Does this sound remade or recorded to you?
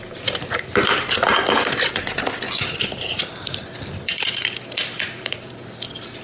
remade